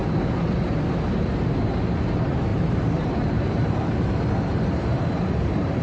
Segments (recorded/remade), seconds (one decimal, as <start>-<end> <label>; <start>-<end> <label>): 0.0-0.8 recorded; 0.8-5.8 remade